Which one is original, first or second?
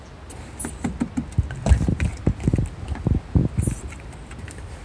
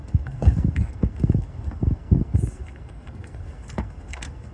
first